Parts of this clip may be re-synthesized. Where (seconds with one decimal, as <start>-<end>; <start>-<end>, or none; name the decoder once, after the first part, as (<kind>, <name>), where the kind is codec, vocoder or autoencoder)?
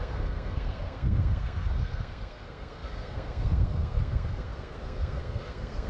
0.0-5.9 (codec, SNAC)